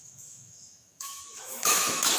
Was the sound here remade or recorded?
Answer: remade